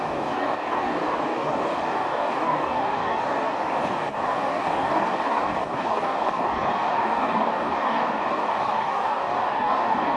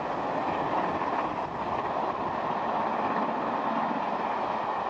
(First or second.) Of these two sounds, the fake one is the first